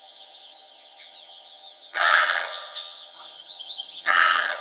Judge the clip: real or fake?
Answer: fake